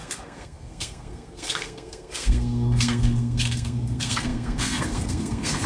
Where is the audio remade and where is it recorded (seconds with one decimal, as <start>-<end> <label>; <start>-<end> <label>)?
0.0-5.7 remade

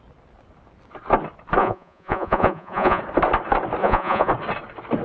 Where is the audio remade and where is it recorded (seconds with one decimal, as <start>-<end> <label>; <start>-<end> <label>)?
0.0-1.6 recorded; 1.6-3.0 remade; 3.0-3.8 recorded; 3.8-4.3 remade; 4.3-5.0 recorded

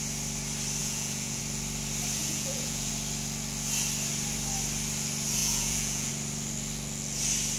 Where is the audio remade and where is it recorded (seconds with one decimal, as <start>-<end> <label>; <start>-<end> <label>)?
0.0-0.8 recorded; 0.8-1.4 remade; 1.4-2.2 recorded; 2.2-2.9 remade; 2.9-5.4 recorded; 5.4-6.1 remade; 6.1-7.6 recorded